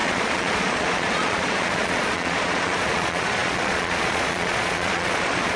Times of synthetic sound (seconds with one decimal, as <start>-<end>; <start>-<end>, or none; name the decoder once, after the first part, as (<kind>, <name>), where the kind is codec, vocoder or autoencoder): 0.0-5.6 (vocoder, Vocos)